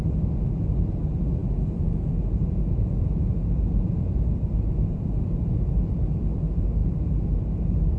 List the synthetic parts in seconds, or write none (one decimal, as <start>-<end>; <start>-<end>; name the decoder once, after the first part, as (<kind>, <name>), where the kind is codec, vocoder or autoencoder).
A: 1.4-6.2 (vocoder, Vocos)